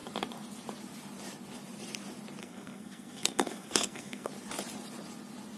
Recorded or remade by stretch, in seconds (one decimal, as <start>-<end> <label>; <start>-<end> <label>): 0.0-2.4 recorded; 2.4-4.3 remade; 4.3-5.6 recorded